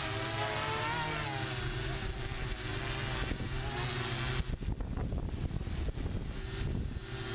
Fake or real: real